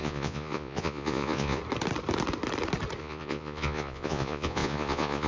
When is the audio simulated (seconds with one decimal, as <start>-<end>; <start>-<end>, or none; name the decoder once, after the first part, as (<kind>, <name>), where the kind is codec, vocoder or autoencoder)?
0.0-1.6 (vocoder, Vocos); 3.0-5.3